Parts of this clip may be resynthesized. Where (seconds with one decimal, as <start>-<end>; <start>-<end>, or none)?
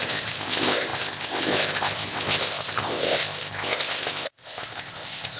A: 0.0-5.4